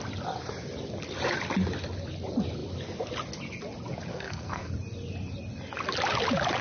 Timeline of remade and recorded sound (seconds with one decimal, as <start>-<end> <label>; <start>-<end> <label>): 0.0-4.1 recorded; 4.1-4.7 remade; 4.7-6.6 recorded